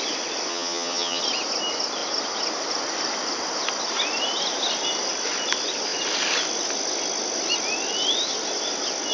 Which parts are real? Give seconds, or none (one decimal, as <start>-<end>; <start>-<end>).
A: 0.0-0.5; 1.2-9.1